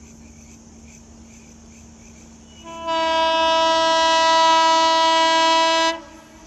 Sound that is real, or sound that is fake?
real